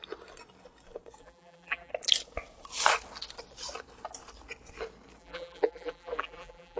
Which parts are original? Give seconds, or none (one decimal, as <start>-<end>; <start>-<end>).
0.0-1.2; 1.9-5.2